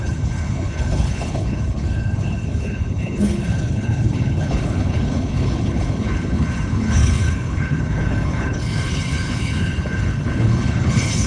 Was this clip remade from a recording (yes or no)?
yes